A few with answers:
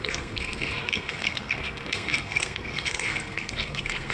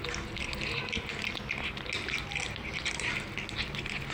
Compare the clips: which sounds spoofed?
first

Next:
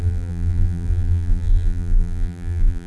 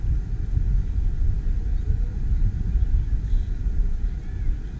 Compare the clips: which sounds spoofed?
first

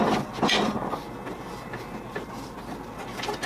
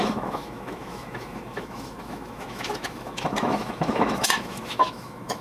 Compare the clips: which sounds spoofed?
second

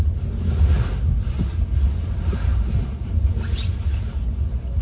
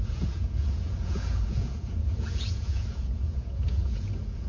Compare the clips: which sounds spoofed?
second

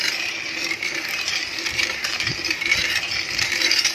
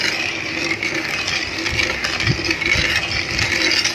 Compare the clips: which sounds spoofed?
first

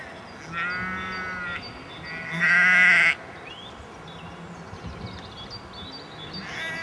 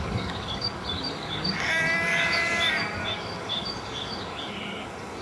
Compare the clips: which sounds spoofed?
second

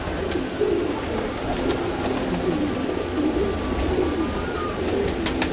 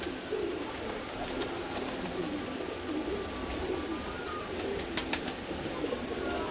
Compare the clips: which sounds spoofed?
second